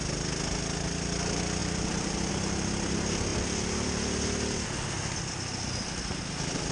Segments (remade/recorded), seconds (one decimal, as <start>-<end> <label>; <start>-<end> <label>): 0.0-1.6 recorded; 1.6-2.3 remade; 2.3-6.7 recorded